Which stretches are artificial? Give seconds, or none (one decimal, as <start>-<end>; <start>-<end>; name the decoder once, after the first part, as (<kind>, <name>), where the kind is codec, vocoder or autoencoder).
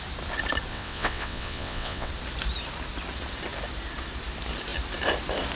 0.7-2.1 (vocoder, WaveNeXt)